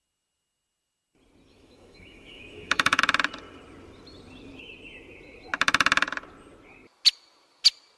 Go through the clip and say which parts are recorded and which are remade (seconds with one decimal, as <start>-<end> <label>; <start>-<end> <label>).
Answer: 0.0-1.5 recorded; 1.5-3.0 remade; 3.0-8.0 recorded